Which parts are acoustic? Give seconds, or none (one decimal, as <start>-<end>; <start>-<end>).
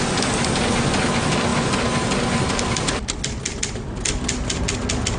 0.0-5.2